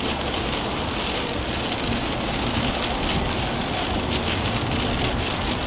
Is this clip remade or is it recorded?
recorded